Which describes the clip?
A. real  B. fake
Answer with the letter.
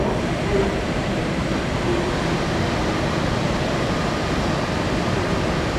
B